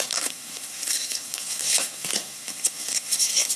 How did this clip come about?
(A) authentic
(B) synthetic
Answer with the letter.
B